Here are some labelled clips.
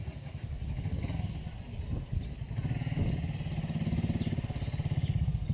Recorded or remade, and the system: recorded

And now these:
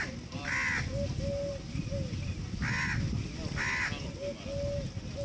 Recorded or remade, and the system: recorded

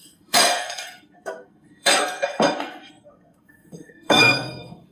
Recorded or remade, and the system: remade, codec, SNAC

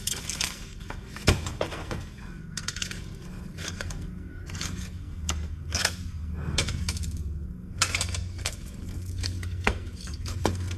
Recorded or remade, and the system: remade, codec, SNAC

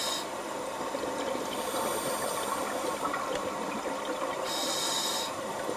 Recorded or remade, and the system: recorded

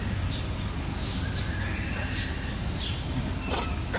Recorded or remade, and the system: recorded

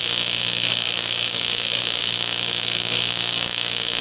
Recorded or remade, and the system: remade, codec, DAC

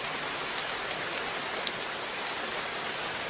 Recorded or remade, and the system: recorded